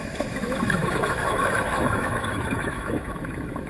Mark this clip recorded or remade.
remade